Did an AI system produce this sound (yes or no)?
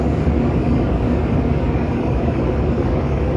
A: yes